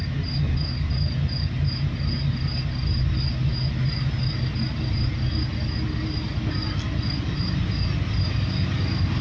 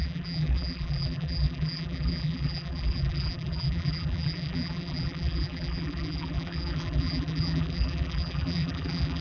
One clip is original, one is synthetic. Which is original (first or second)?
first